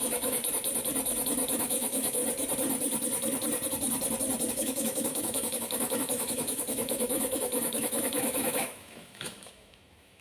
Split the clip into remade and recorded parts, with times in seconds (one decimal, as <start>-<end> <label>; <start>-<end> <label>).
0.0-0.4 remade; 0.4-1.6 recorded; 1.6-2.2 remade; 2.2-4.5 recorded; 4.5-10.2 remade